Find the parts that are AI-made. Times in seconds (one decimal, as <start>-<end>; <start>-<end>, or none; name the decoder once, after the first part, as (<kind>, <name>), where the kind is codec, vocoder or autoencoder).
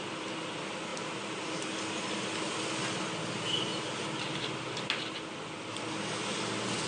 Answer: none